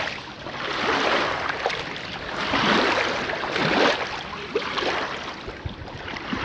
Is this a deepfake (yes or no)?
no